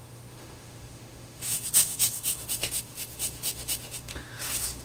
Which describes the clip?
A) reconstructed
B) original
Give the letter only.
A